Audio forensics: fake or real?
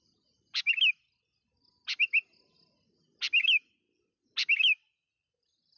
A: real